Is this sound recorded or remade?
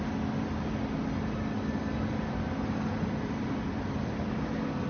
recorded